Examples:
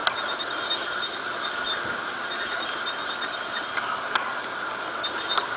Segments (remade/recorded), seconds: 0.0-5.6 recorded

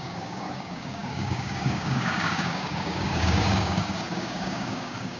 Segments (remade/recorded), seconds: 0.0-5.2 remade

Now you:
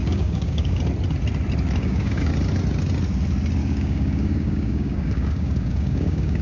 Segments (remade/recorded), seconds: 0.0-0.8 remade; 0.8-1.8 recorded; 1.8-2.3 remade; 2.3-3.6 recorded; 3.6-6.4 remade

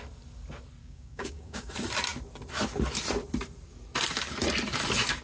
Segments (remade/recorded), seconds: 0.0-0.8 recorded; 0.8-1.7 remade; 1.7-5.2 recorded